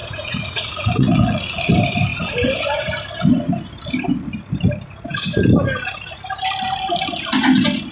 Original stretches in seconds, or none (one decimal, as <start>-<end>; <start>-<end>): 1.7-7.9

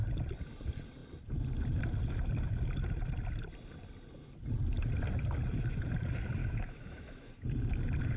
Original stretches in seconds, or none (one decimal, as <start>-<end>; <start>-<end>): 0.0-6.4; 7.3-8.2